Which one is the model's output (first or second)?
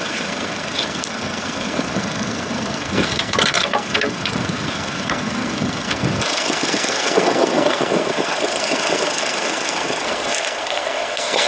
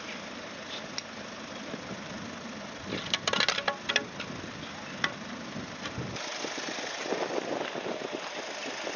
first